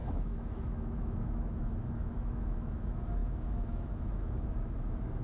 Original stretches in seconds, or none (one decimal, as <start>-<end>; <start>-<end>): none